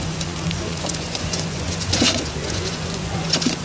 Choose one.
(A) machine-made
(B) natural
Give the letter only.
A